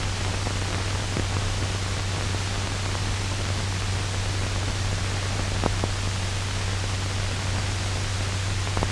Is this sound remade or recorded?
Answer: recorded